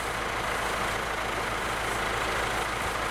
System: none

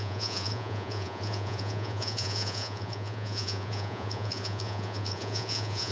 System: vocoder, Vocos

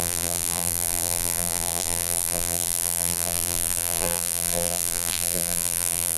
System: vocoder, BigVGAN v2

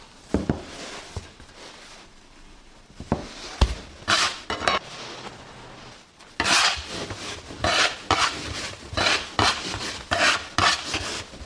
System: none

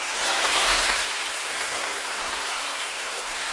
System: codec, SNAC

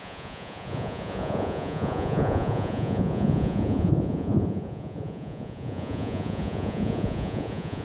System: vocoder, Vocos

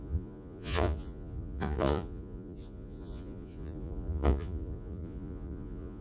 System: vocoder, Vocos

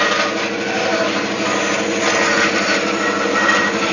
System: none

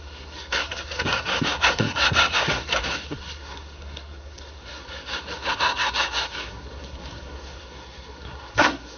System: codec, SNAC